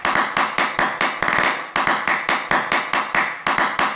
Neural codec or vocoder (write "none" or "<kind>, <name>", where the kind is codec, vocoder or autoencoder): none